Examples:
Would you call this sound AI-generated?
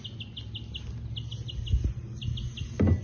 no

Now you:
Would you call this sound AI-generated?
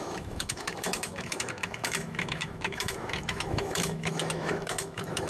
yes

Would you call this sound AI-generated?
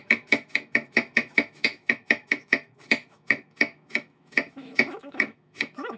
yes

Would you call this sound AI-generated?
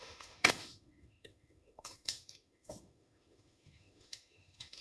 yes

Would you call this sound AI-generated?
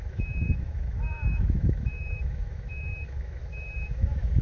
yes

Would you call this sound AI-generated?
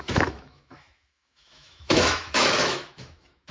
yes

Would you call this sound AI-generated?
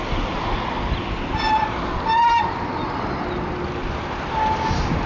no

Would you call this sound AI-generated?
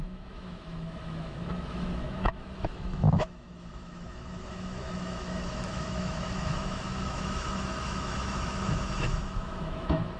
yes